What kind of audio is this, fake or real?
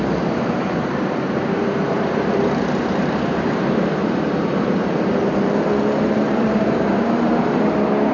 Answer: fake